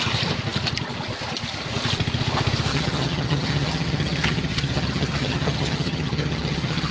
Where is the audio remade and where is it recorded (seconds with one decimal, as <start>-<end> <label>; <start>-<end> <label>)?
0.0-2.7 recorded; 2.7-6.9 remade